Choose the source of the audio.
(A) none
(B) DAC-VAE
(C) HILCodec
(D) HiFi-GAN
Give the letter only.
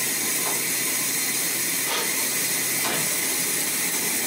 A